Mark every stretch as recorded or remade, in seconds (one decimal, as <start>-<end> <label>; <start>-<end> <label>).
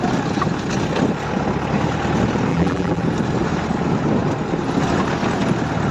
0.0-2.5 recorded; 2.5-3.0 remade; 3.0-5.9 recorded